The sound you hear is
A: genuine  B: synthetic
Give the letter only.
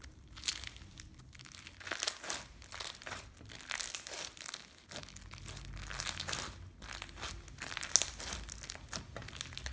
A